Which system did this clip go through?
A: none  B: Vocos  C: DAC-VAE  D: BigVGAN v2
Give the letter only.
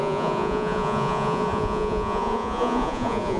B